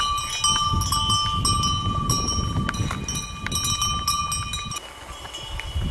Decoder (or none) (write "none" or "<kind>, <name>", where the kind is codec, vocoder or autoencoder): none